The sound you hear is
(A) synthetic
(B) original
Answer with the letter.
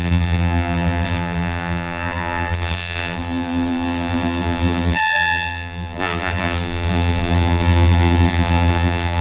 A